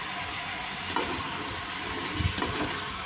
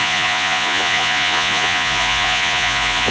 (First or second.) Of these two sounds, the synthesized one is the second